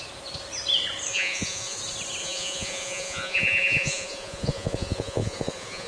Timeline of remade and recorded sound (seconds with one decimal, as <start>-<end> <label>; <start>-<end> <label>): 0.0-1.1 recorded; 1.1-1.8 remade; 1.8-2.2 recorded; 2.2-5.9 remade